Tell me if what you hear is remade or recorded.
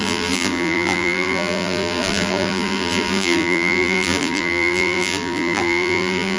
remade